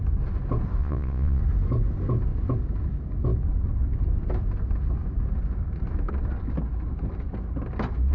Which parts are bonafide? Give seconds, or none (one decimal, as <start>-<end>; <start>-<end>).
0.0-0.8; 1.4-8.1